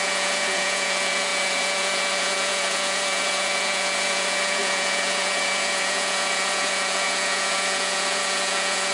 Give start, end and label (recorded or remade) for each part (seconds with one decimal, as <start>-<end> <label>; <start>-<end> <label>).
0.0-8.9 remade